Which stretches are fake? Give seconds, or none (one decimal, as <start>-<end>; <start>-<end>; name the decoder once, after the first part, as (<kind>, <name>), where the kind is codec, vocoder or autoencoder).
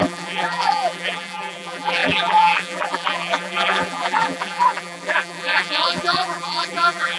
0.0-7.2 (vocoder, BigVGAN v2)